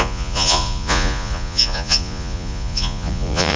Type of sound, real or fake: fake